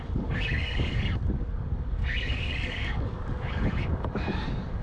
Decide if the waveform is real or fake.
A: fake